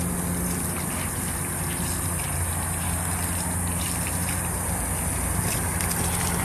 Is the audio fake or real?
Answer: fake